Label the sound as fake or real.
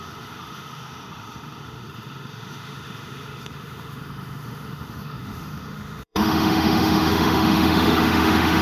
fake